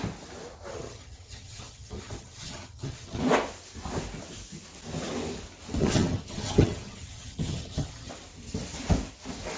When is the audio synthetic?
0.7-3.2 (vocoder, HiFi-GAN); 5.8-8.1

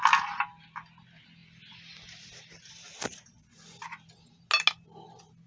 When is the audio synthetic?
none

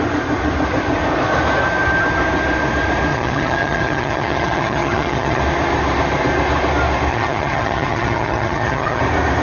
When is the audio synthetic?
3.1-5.4 (vocoder, HiFi-GAN); 7.1-9.0

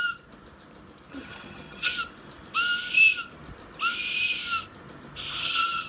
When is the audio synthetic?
1.1-1.9 (vocoder, HiFi-GAN); 5.4-5.9

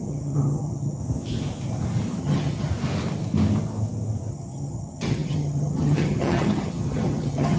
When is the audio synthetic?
0.0-1.0 (vocoder, HiFi-GAN); 2.2-2.7; 4.3-7.6

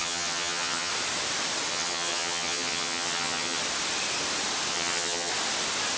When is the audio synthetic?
0.0-0.9 (vocoder, HiFi-GAN); 1.7-3.6; 4.7-5.3

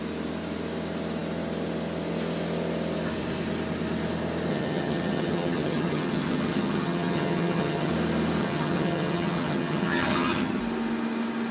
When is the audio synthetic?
4.5-7.9 (vocoder, HiFi-GAN); 8.4-10.6

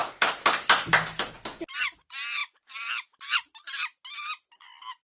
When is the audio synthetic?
none